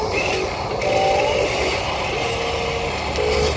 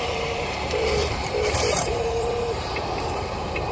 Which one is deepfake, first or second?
second